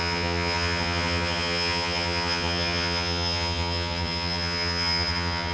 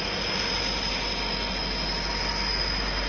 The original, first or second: second